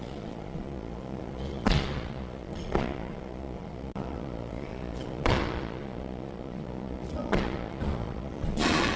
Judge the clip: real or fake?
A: fake